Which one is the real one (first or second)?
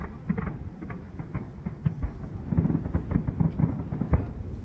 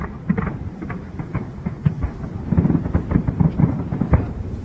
first